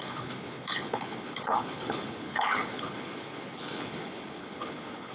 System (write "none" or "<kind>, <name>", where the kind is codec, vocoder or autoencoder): codec, HILCodec